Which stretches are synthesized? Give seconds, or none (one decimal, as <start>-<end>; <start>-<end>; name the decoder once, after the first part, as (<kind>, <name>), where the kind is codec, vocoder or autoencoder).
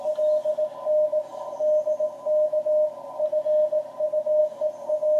none